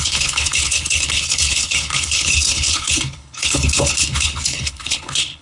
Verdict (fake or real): fake